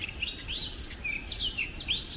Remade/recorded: recorded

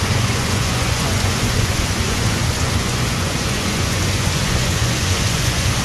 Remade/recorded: remade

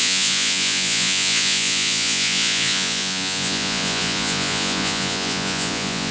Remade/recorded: remade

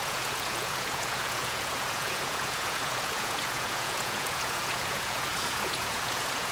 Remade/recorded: remade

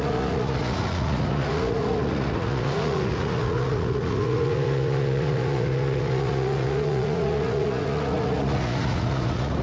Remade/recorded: remade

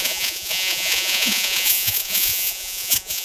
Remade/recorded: remade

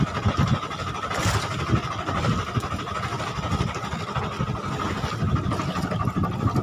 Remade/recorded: recorded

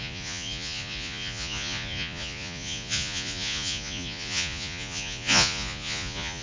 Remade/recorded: remade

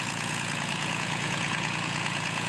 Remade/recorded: remade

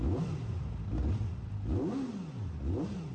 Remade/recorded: recorded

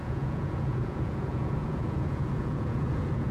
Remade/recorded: remade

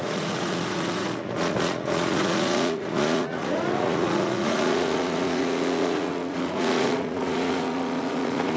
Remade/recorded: remade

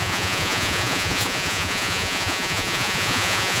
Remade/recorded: remade